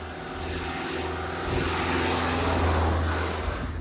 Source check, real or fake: real